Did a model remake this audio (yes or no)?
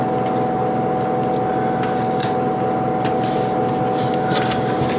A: no